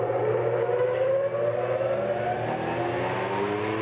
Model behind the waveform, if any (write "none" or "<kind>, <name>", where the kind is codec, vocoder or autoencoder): none